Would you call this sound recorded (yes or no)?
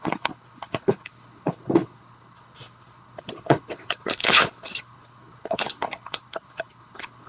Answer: no